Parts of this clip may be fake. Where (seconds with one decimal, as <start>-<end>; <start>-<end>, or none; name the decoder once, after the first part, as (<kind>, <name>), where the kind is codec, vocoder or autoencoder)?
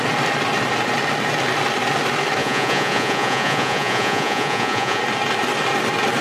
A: 2.4-5.0 (vocoder, Vocos)